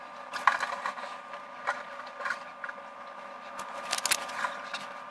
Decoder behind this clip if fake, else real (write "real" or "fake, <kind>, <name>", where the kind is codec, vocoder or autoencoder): real